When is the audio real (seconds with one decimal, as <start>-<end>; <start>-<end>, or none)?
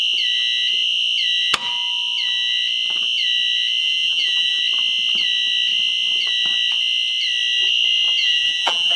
0.0-3.8; 4.6-8.2